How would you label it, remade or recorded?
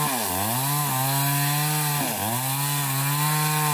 recorded